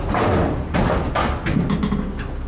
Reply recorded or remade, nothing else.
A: recorded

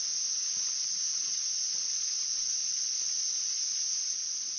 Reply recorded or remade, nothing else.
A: recorded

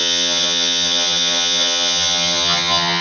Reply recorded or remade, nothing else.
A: remade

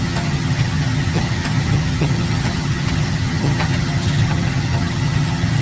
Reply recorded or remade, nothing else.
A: remade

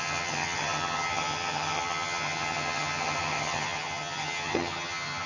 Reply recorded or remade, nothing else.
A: remade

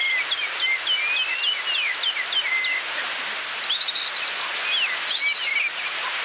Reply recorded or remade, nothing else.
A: recorded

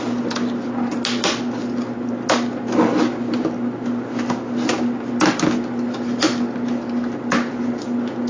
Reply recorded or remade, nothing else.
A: recorded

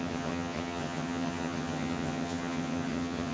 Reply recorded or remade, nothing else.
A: remade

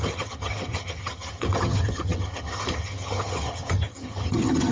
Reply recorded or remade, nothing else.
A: remade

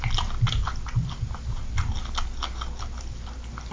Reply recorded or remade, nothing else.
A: recorded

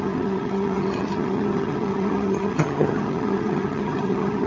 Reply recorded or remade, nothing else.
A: remade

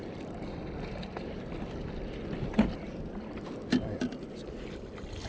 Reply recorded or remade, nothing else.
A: recorded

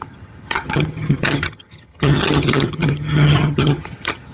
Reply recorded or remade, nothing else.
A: remade